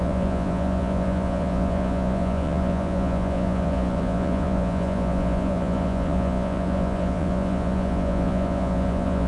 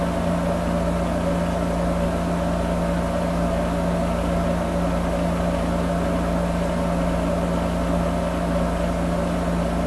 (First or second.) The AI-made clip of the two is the first